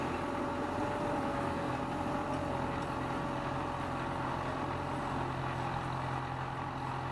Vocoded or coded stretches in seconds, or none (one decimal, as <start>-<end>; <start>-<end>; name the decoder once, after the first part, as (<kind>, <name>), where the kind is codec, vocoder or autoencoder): 1.3-1.8 (codec, SNAC)